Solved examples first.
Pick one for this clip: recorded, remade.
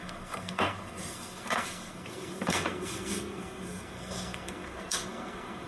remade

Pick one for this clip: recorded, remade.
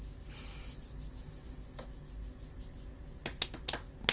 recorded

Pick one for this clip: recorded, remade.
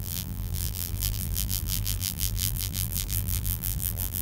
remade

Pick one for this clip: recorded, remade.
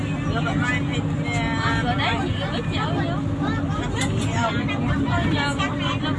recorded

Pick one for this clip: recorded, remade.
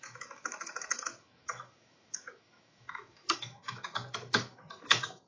remade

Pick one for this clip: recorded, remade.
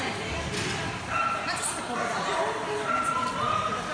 recorded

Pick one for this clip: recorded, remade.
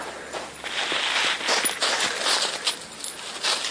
recorded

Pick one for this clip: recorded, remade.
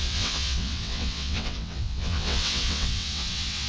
remade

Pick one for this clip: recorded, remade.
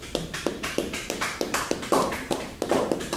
remade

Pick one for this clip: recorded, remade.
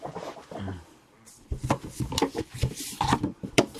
remade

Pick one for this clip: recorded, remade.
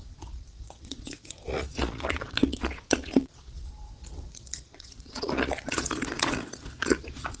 remade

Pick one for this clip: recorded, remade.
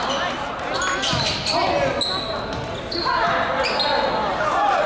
recorded